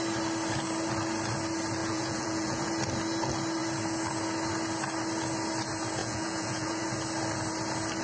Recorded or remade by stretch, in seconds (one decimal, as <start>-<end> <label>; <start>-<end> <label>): 0.0-1.8 recorded; 1.8-2.7 remade; 2.7-6.0 recorded; 6.0-6.8 remade; 6.8-8.0 recorded